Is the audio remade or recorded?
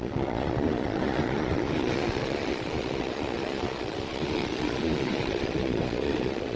remade